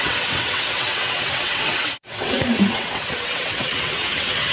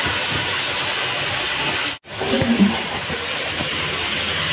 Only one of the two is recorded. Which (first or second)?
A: second